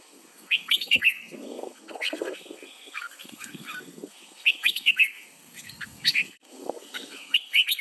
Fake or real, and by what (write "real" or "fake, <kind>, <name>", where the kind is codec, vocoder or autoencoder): fake, codec, SNAC